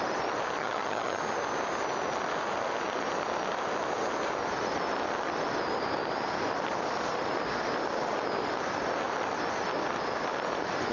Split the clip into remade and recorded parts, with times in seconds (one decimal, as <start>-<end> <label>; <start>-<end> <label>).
0.0-0.6 recorded; 0.6-1.2 remade; 1.2-10.9 recorded